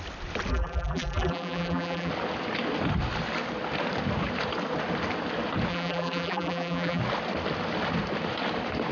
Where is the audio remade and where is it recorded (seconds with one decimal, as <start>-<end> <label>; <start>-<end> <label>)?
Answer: 0.0-0.5 recorded; 0.5-2.1 remade; 2.1-5.7 recorded; 5.7-7.0 remade; 7.0-8.9 recorded